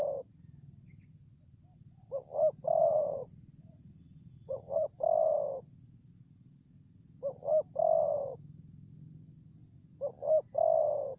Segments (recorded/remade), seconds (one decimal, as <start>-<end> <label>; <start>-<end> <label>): 0.0-2.8 recorded; 2.8-4.9 remade; 4.9-11.2 recorded